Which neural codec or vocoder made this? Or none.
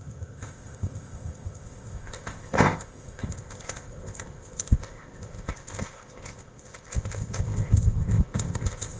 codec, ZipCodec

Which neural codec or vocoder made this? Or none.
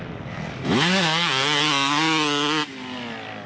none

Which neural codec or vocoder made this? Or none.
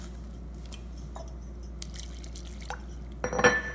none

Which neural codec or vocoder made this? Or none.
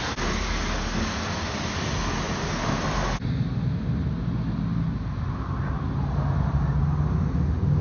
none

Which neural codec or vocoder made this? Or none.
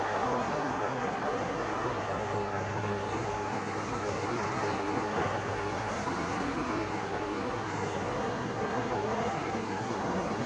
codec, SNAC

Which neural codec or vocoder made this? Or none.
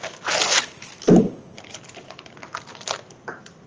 none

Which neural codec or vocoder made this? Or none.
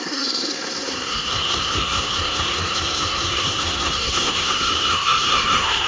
codec, SNAC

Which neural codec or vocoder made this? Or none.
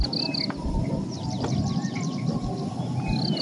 none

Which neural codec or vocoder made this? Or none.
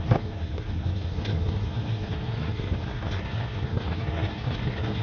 codec, SNAC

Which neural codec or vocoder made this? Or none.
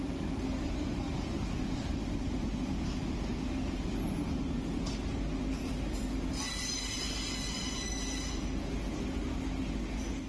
none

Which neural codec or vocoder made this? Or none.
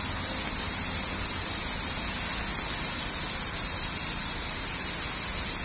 none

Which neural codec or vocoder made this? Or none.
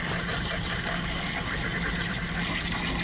none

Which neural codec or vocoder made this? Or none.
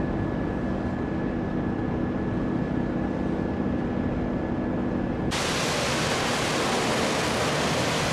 none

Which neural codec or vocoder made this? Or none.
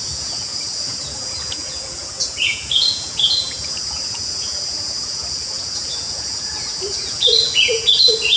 vocoder, Vocos